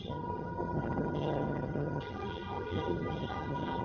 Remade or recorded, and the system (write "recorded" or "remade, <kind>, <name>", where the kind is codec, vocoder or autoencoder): remade, vocoder, HiFi-GAN